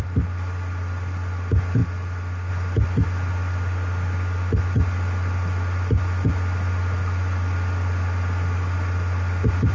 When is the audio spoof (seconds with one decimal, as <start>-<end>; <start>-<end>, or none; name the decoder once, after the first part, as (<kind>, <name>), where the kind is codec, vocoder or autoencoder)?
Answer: none